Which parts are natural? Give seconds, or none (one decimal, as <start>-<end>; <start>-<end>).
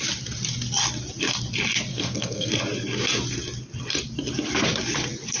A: 0.0-1.9; 2.5-5.4